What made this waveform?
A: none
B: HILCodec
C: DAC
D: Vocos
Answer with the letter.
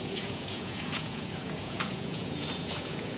D